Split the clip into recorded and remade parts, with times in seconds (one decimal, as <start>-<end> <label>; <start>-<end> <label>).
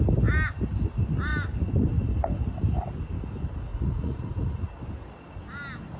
0.0-3.7 recorded; 3.7-4.7 remade; 4.7-6.0 recorded